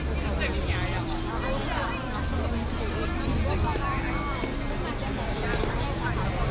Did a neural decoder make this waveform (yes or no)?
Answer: no